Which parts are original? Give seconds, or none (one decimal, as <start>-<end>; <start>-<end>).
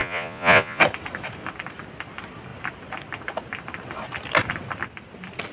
0.8-5.5